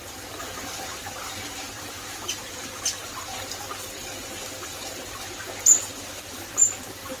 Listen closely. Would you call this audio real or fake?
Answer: fake